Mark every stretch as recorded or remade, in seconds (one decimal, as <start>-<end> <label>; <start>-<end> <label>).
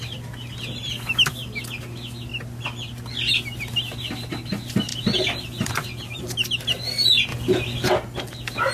0.0-4.9 recorded; 4.9-6.2 remade; 6.2-8.7 recorded